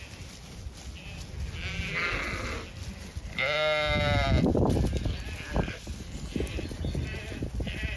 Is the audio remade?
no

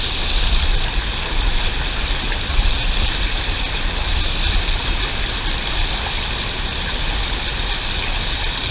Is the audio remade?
no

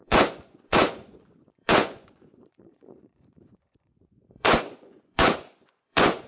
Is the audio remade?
yes